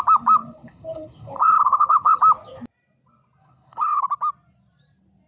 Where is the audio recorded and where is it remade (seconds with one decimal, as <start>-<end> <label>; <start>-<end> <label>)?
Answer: 0.0-0.4 recorded; 0.4-2.2 remade; 2.2-3.4 recorded; 3.4-4.1 remade; 4.1-5.3 recorded